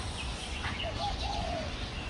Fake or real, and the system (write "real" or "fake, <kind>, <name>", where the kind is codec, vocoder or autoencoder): fake, vocoder, Vocos